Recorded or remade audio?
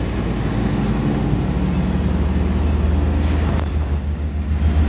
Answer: recorded